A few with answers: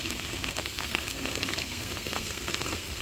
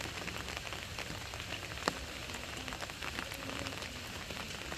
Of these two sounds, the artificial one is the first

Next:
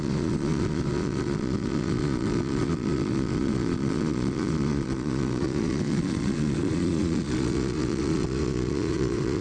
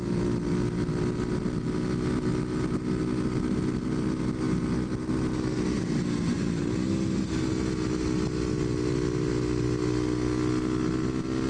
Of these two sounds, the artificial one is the first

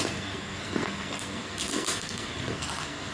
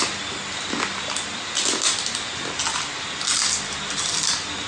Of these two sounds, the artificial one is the first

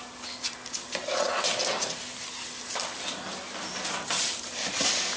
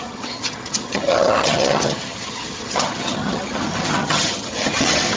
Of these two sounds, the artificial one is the second